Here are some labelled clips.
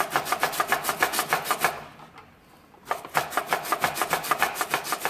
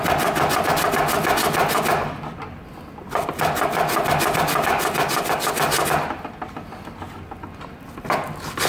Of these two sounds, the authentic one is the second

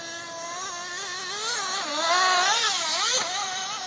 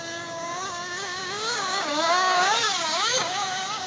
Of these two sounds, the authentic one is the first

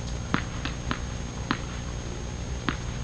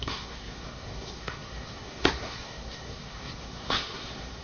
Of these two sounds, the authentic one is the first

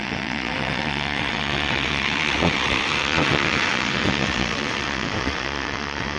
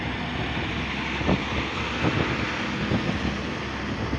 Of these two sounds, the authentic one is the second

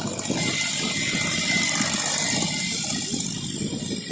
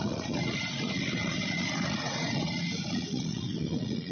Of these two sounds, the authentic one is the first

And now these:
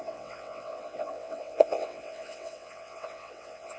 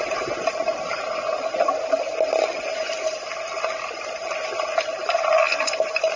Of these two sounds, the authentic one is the second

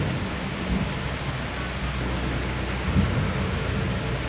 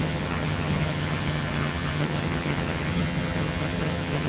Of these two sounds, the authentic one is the first